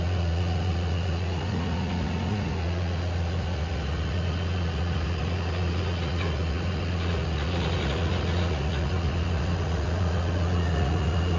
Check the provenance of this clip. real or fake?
fake